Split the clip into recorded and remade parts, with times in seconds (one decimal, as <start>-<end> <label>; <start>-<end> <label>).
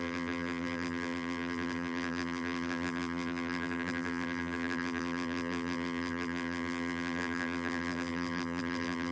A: 0.0-9.1 remade